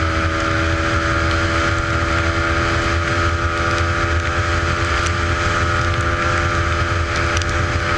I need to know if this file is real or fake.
real